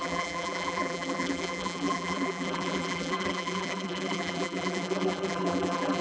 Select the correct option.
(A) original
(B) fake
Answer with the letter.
B